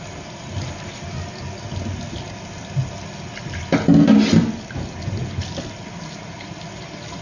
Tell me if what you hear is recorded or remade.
recorded